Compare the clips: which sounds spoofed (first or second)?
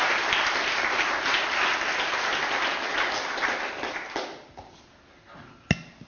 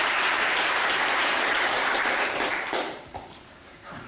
second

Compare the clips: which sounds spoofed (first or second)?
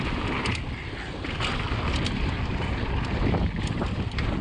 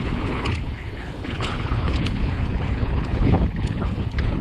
second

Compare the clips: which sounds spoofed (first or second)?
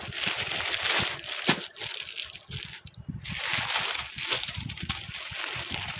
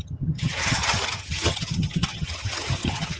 second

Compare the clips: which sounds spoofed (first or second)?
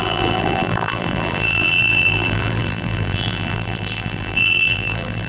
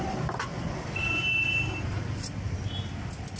first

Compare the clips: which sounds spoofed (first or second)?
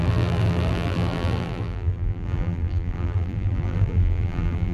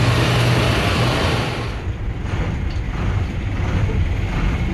first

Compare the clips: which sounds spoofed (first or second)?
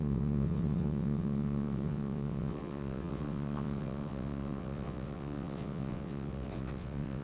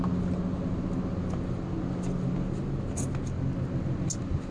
first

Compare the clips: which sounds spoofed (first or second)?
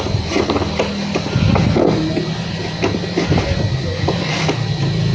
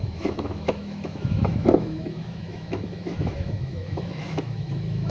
second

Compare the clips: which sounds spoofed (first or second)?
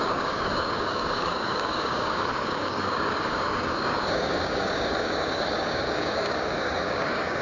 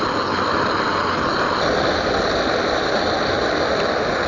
first